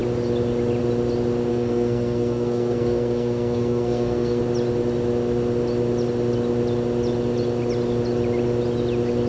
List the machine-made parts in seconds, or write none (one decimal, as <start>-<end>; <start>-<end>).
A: 1.5-4.4